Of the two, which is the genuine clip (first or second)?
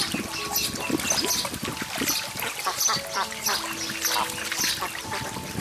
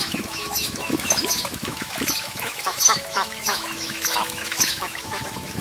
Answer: first